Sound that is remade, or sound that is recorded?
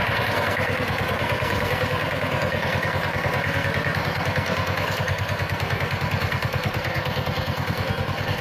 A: remade